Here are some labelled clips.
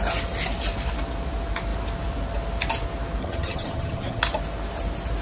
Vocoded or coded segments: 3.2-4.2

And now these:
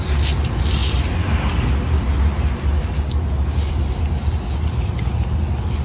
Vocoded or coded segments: none

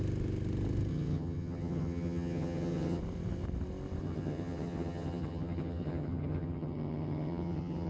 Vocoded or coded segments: 0.9-3.0; 4.0-7.9

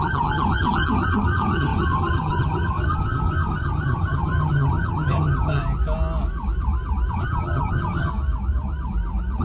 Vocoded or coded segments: 0.0-5.6; 7.1-8.1